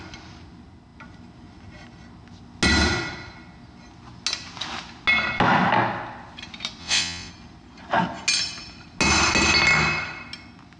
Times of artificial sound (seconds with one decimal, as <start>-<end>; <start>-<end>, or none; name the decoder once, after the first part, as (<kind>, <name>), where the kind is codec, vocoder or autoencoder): 6.8-7.3 (vocoder, WaveNeXt)